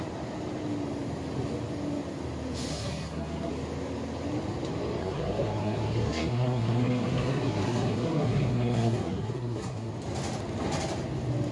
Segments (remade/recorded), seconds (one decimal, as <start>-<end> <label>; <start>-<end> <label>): 0.0-2.7 recorded; 2.7-3.5 remade; 3.5-5.0 recorded; 5.0-9.9 remade; 9.9-11.5 recorded